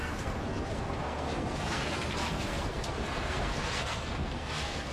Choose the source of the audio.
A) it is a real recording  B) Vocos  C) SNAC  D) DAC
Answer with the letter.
C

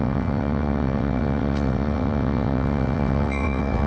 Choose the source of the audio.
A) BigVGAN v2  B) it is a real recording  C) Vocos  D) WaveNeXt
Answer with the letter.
D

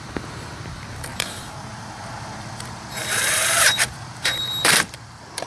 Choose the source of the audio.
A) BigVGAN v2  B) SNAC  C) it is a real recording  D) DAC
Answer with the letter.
A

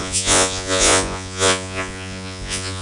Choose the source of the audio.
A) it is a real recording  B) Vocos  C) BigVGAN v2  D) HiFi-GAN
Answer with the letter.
B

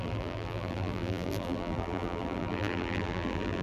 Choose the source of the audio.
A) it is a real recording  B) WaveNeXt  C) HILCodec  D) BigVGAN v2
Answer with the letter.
D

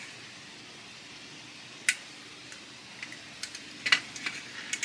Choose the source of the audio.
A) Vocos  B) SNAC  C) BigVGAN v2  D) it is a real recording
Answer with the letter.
D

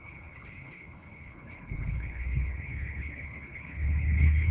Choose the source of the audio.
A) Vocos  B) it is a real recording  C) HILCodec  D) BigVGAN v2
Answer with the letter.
C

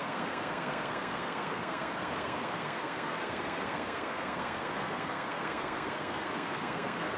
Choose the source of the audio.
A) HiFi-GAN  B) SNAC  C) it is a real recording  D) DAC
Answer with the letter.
B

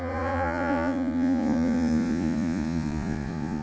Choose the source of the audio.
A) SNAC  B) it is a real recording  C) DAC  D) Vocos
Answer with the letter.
D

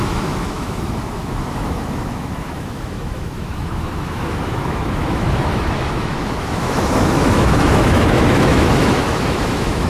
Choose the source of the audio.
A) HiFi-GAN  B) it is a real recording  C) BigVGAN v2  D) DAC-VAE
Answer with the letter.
D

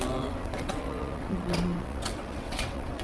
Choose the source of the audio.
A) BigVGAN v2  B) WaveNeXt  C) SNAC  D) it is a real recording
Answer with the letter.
B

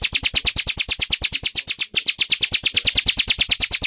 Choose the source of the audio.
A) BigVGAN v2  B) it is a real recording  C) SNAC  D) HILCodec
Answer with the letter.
B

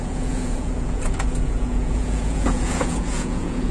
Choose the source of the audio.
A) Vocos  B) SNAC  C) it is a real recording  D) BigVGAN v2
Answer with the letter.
A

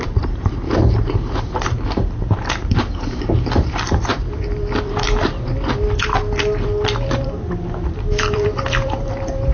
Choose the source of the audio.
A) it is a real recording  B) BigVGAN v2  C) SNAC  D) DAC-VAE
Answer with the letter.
B